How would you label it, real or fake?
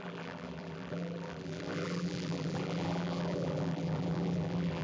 fake